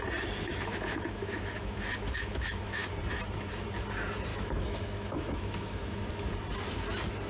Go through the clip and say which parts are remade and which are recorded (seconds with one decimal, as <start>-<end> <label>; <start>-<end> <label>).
0.0-0.5 recorded; 0.5-2.9 remade; 2.9-4.3 recorded; 4.3-6.1 remade; 6.1-7.3 recorded